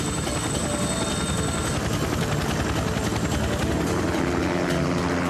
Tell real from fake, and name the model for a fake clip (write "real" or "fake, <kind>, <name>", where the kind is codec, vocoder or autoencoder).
real